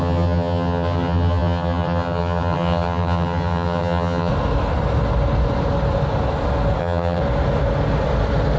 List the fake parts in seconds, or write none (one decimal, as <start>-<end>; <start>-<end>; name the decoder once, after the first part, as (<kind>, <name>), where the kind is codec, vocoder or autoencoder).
0.0-4.3 (vocoder, HiFi-GAN); 6.8-7.2